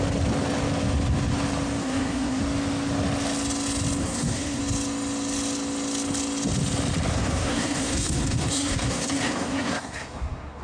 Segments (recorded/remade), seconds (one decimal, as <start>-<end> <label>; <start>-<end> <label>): 0.0-1.8 recorded; 1.8-2.4 remade; 2.4-4.0 recorded; 4.0-4.6 remade; 4.6-7.1 recorded; 7.1-10.6 remade